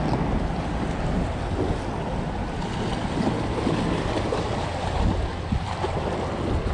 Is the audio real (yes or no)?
yes